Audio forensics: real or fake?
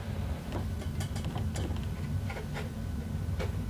real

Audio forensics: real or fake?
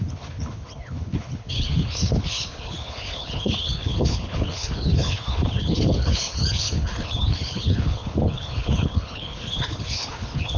fake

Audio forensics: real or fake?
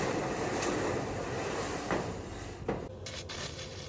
fake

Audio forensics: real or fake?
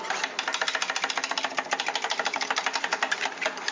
real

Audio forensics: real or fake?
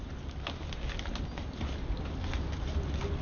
real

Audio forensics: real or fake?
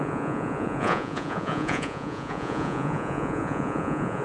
fake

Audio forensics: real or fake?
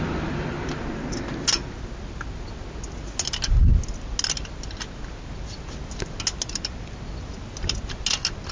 real